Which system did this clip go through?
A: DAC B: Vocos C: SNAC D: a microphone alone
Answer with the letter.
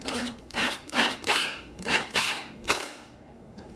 C